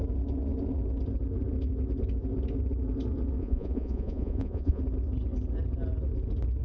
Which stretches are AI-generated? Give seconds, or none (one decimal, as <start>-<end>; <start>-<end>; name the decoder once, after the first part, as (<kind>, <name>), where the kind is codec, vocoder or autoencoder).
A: 3.4-4.8 (vocoder, Vocos)